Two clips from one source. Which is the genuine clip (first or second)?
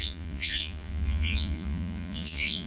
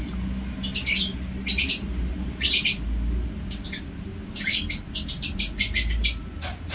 second